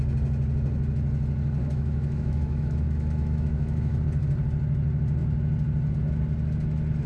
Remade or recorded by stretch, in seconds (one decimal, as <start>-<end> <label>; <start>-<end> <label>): 0.0-1.6 recorded; 1.6-4.0 remade; 4.0-7.1 recorded